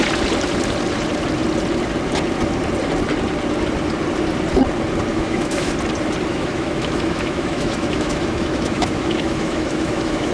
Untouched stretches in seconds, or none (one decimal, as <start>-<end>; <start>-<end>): 0.0-5.1; 5.7-6.3